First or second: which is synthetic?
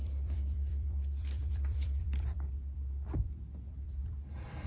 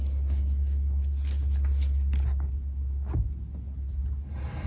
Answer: first